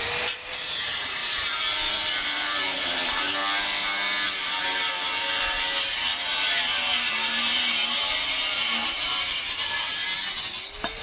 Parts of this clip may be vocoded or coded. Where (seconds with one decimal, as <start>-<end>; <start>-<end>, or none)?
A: 0.0-3.4; 4.6-10.0